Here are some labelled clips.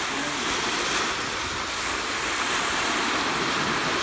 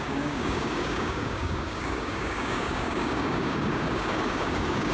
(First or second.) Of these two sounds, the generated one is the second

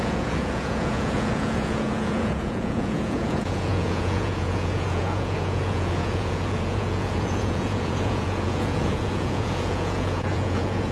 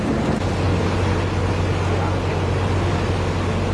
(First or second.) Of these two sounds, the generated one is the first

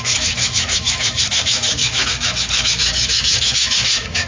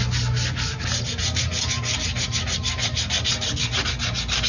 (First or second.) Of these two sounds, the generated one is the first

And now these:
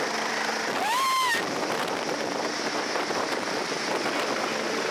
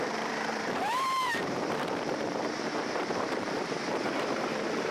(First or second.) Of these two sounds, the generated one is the second